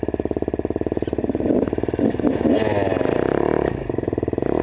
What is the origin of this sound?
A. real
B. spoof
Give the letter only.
A